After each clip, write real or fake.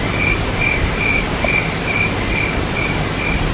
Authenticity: real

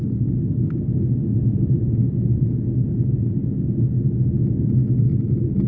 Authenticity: real